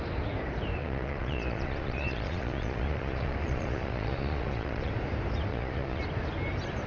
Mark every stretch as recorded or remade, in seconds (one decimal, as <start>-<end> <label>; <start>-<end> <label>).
0.0-0.8 recorded; 0.8-4.9 remade; 4.9-5.5 recorded; 5.5-6.0 remade; 6.0-6.9 recorded